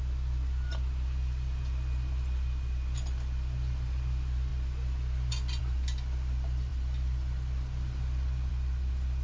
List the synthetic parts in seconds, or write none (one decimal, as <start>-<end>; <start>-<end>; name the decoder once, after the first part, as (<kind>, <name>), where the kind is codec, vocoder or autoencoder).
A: none